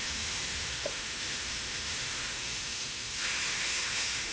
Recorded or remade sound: remade